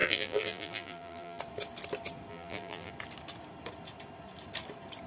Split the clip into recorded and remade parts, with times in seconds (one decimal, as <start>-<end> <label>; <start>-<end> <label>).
0.0-1.4 remade; 1.4-2.3 recorded; 2.3-2.9 remade; 2.9-5.1 recorded